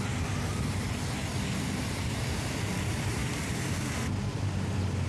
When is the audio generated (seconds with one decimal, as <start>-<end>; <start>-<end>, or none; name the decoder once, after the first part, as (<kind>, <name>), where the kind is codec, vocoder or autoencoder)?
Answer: 1.3-3.8 (vocoder, BigVGAN v2)